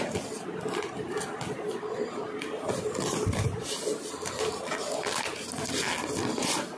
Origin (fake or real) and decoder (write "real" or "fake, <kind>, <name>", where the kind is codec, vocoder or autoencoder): real